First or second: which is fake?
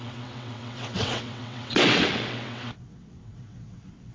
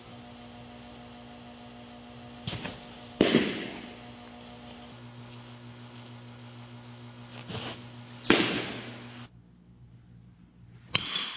first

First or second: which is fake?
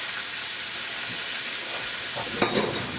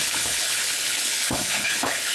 second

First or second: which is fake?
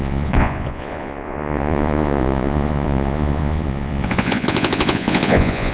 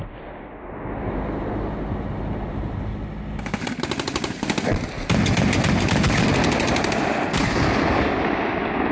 first